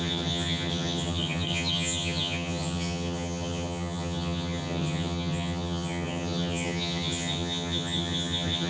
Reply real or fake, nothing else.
fake